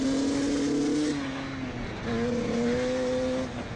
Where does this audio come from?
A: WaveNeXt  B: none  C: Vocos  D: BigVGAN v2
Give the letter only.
B